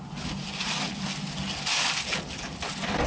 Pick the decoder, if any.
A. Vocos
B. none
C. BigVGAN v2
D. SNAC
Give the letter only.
B